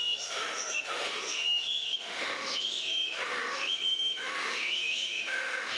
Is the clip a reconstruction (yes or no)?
yes